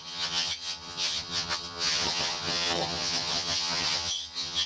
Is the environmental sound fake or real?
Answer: fake